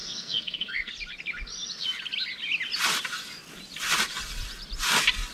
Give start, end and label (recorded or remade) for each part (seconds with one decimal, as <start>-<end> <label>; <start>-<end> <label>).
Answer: 0.0-0.9 remade; 0.9-5.3 recorded